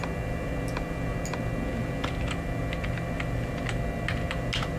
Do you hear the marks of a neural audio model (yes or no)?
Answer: no